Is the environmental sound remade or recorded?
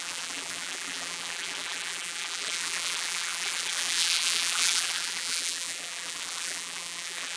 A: remade